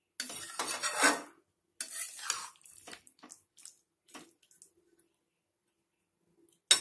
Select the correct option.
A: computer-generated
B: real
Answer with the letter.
B